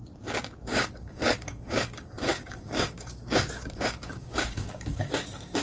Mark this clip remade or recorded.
remade